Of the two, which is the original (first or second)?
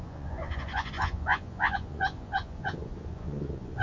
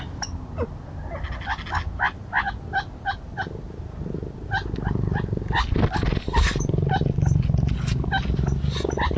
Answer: second